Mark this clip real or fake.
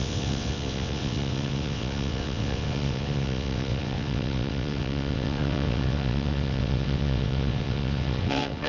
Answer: fake